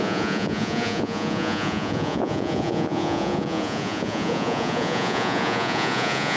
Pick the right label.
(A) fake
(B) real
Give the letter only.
A